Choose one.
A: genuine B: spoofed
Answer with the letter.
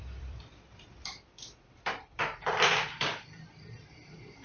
B